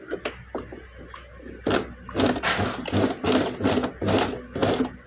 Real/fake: real